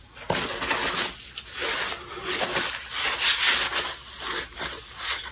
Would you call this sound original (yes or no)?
yes